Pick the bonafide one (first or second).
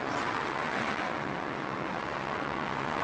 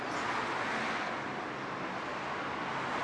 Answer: second